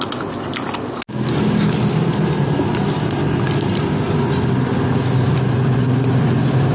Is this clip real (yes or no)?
yes